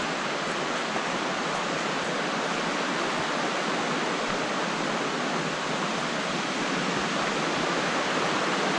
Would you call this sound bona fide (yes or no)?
yes